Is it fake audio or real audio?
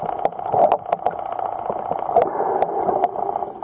real